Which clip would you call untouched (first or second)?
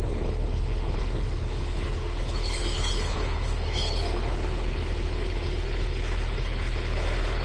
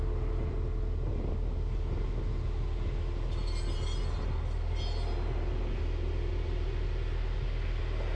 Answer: second